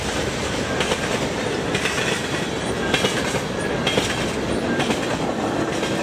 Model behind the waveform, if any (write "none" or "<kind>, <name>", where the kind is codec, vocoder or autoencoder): none